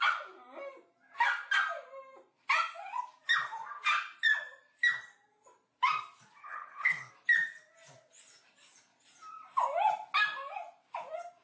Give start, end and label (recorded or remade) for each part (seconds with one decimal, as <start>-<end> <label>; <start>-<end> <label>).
0.0-6.4 recorded; 6.4-7.1 remade; 7.1-11.4 recorded